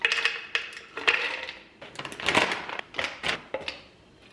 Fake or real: real